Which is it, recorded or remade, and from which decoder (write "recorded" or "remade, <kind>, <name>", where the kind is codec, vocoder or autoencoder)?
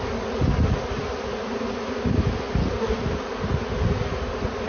recorded